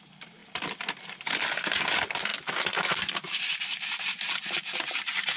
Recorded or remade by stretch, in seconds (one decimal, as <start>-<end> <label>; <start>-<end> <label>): 0.0-5.4 remade